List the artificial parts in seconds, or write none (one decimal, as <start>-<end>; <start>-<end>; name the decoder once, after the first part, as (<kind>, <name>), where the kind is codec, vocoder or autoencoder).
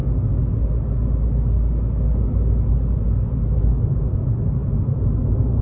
none